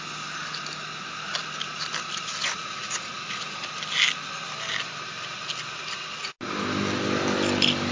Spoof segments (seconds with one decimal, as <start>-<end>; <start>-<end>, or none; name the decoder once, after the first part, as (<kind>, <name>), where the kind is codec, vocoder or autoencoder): 2.4-3.1 (vocoder, Vocos)